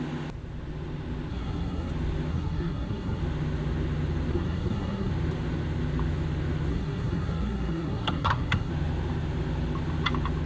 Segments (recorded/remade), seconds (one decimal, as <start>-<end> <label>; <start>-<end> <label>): 0.0-1.3 recorded; 1.3-1.9 remade; 1.9-2.3 recorded; 2.3-3.2 remade; 3.2-4.3 recorded; 4.3-5.1 remade; 5.1-6.7 recorded; 6.7-8.7 remade; 8.7-10.5 recorded